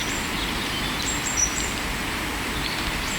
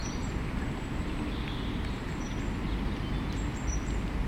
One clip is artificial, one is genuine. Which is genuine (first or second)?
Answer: second